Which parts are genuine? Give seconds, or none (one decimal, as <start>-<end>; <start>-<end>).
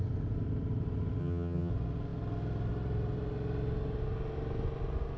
0.0-1.2; 1.7-5.2